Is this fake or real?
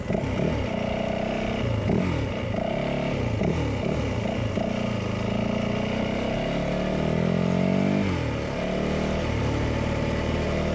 real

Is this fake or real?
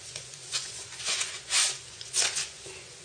fake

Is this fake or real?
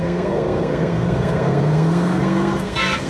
fake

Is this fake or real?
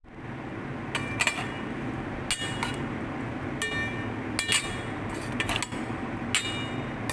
real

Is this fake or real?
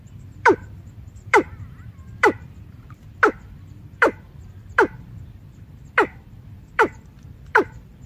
fake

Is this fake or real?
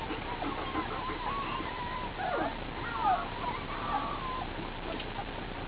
real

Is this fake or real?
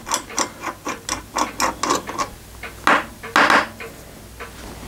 real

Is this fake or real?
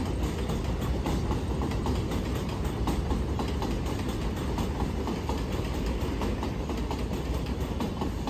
real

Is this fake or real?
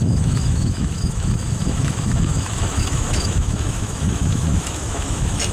fake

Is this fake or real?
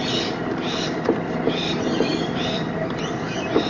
fake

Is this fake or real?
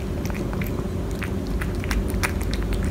real